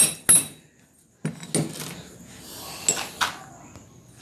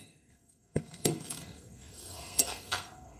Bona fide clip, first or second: first